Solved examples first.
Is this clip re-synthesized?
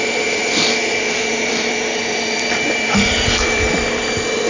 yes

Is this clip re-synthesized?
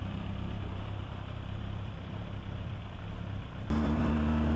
yes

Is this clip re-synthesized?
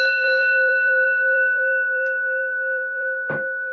yes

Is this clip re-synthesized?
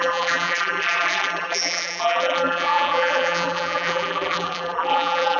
yes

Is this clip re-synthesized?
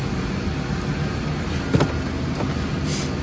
no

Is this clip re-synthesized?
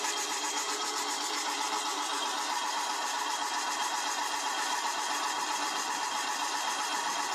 yes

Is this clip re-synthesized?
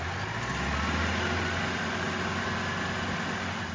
no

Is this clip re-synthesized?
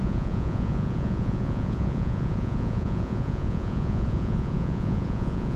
yes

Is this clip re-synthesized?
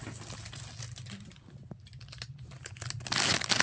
no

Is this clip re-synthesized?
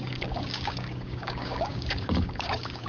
yes